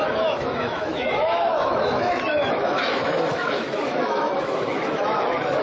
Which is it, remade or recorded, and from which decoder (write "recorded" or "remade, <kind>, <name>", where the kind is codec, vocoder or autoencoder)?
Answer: remade, autoencoder, DAC-VAE